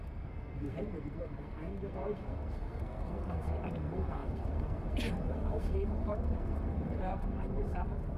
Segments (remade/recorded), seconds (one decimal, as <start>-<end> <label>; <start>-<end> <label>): 0.0-8.2 remade